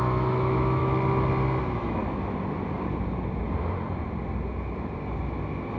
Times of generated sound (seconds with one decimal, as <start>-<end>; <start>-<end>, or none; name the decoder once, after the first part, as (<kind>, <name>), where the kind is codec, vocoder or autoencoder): 0.0-0.8 (autoencoder, DAC-VAE); 1.6-2.0

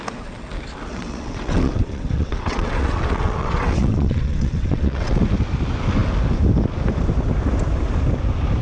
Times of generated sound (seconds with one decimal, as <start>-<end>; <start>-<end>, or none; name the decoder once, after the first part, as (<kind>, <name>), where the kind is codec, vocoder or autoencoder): 0.9-5.2 (vocoder, WaveNeXt)